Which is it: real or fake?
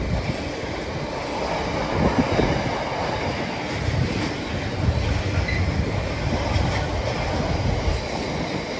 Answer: real